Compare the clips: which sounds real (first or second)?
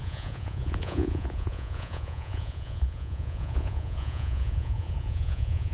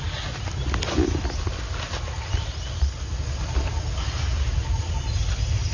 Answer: second